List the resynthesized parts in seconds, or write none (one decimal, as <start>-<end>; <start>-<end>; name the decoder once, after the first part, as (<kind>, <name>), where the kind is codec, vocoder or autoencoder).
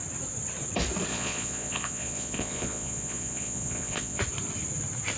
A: 1.1-4.2 (vocoder, Vocos)